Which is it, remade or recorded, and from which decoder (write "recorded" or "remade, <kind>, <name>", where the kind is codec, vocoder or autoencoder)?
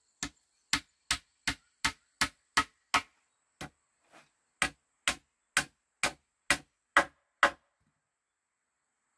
recorded